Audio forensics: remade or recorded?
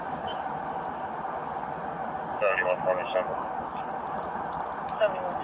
recorded